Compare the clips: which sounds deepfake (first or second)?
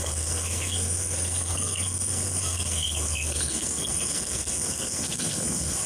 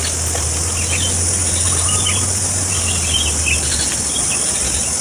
first